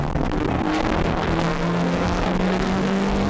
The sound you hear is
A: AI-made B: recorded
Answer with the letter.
A